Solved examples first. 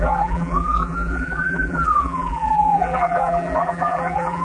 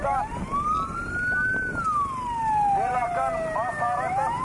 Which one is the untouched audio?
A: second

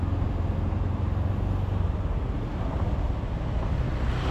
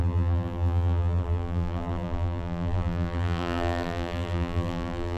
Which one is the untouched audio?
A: first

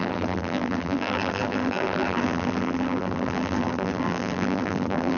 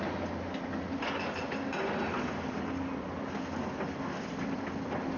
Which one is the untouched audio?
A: second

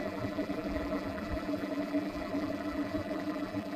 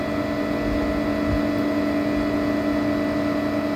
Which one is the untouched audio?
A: second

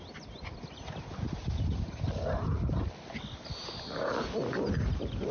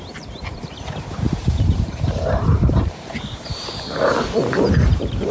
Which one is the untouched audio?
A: first